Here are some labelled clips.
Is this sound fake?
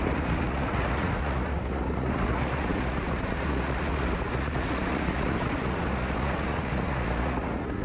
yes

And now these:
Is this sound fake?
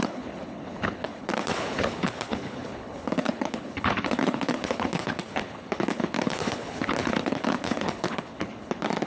yes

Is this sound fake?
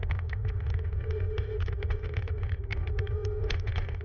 yes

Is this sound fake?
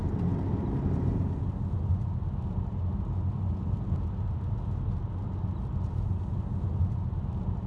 no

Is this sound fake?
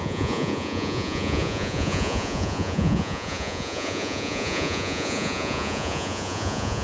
yes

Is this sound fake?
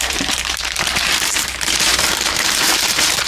yes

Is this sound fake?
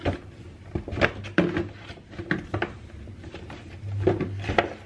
no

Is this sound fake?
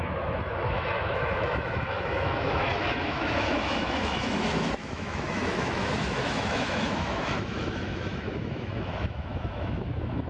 yes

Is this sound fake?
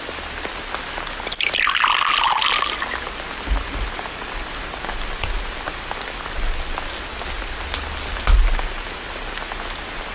no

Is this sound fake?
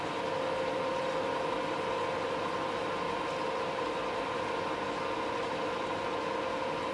no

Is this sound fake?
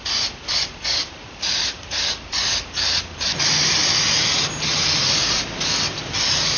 no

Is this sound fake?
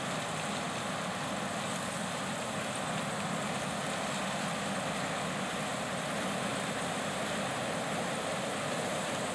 no